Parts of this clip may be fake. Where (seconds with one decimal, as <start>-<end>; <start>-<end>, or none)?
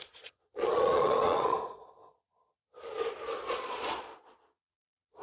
0.0-2.6; 3.5-5.2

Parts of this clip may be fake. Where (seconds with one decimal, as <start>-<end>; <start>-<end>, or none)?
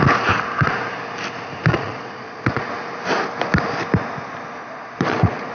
1.7-2.7; 4.6-5.5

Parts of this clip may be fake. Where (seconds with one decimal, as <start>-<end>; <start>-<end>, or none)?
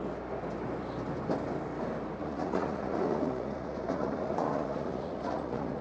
2.2-5.8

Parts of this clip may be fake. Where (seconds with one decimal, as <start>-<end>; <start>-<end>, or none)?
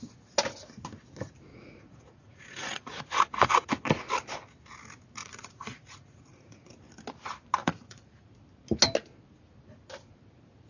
1.5-3.7; 5.2-6.7; 7.6-8.3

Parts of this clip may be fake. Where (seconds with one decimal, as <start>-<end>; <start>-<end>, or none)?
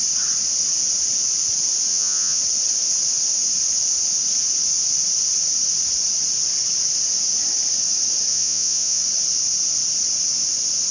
1.9-2.4; 8.3-9.0